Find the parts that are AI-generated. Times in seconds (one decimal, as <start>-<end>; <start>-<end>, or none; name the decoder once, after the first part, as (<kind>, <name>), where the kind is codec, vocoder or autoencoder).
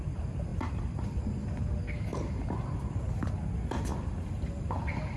0.0-2.1 (vocoder, BigVGAN v2); 2.8-5.2